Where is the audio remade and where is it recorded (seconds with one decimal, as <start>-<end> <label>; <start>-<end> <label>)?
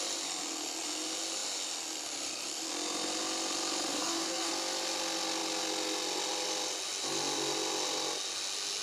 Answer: 0.0-3.9 recorded; 3.9-4.5 remade; 4.5-8.8 recorded